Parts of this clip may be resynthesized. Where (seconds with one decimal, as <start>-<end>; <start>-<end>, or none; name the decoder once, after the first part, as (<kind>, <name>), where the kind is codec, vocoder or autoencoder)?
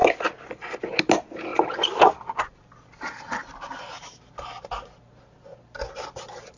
0.0-0.8 (vocoder, BigVGAN v2); 1.5-4.6